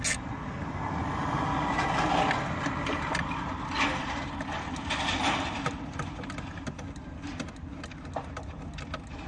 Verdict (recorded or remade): recorded